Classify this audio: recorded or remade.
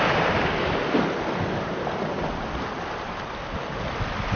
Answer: recorded